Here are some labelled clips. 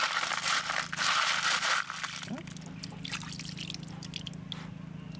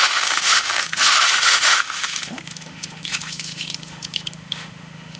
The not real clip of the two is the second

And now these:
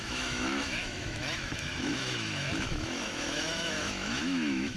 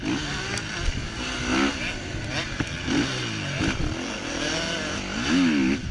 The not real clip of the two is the first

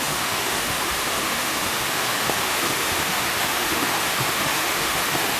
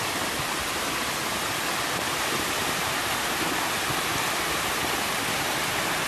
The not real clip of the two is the first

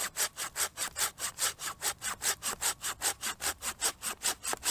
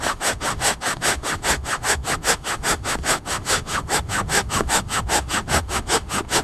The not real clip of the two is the second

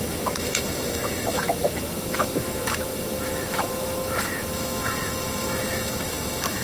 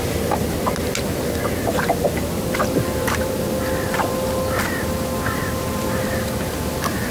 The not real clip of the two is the first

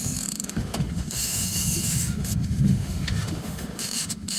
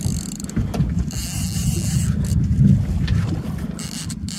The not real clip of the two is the first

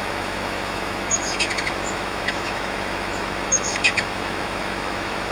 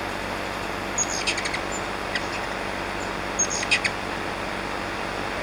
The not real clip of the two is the first